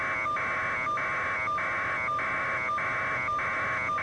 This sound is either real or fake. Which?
real